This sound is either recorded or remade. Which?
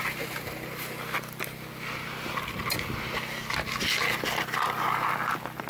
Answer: recorded